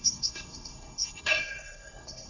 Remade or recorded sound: remade